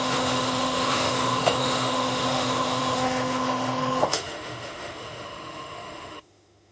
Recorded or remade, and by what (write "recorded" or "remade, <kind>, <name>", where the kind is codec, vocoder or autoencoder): remade, autoencoder, DAC-VAE